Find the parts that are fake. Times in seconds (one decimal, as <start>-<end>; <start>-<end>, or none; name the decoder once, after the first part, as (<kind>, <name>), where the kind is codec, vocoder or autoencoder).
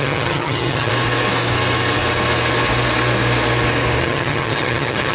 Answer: 0.0-0.9 (vocoder, HiFi-GAN); 4.0-5.1